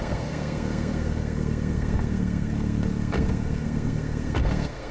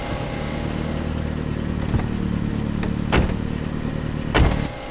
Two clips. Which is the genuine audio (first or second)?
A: second